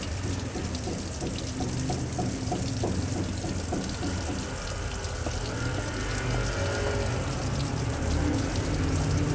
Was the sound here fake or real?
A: real